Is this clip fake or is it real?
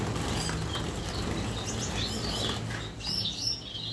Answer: real